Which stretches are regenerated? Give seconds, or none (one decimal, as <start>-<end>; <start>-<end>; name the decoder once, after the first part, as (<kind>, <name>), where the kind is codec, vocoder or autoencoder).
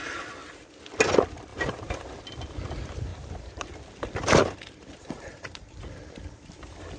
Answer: 1.5-2.2 (vocoder, BigVGAN v2); 3.1-3.8; 4.4-5.8